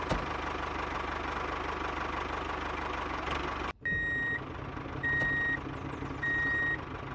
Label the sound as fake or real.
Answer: real